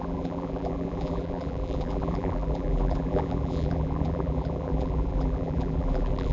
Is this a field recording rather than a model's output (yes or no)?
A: no